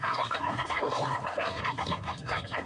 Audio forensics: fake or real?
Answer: fake